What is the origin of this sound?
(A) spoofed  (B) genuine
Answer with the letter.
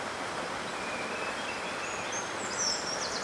A